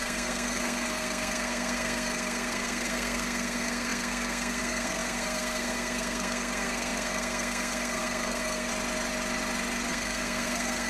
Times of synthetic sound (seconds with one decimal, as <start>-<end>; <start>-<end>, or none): 0.0-8.7; 9.9-10.9